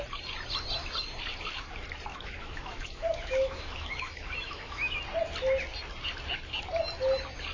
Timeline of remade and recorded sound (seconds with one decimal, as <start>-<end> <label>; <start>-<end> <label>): 0.0-2.1 recorded; 2.1-5.0 remade; 5.0-7.5 recorded